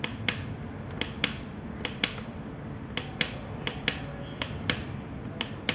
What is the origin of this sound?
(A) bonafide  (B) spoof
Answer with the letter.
A